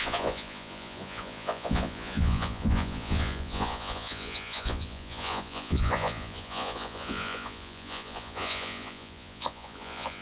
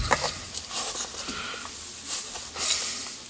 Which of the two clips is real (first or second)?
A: second